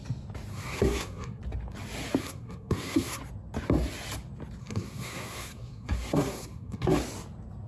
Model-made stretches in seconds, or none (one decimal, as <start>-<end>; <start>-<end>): 0.5-1.4; 2.2-3.2; 4.6-7.0